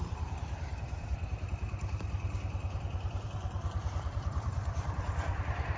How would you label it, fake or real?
fake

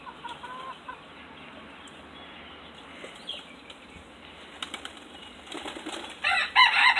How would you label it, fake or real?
real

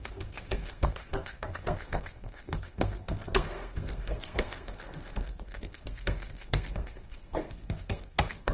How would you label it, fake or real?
fake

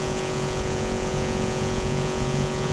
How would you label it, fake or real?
fake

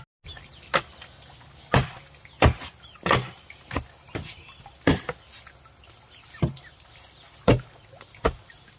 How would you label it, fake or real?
real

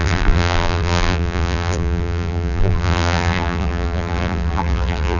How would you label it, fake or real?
fake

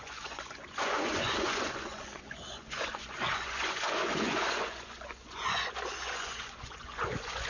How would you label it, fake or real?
fake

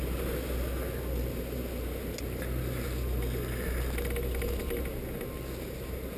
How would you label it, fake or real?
real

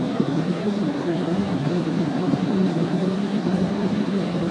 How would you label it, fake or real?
fake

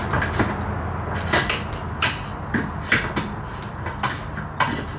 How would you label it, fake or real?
real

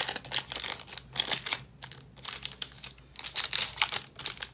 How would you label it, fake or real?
real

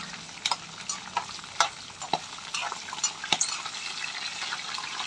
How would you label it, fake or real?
real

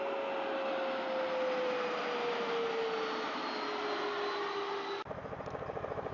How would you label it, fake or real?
real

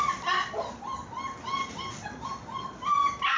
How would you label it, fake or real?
real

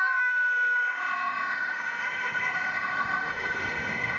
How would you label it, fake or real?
fake